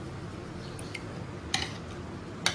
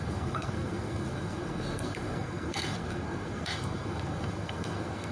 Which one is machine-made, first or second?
second